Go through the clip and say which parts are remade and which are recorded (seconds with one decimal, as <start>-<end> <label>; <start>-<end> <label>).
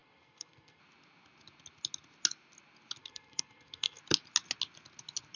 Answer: 0.0-0.8 remade; 0.8-3.0 recorded; 3.0-4.0 remade; 4.0-5.4 recorded